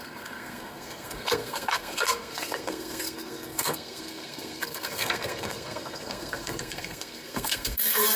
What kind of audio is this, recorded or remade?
remade